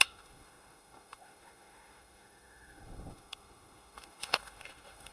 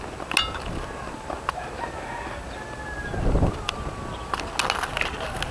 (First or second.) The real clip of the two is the second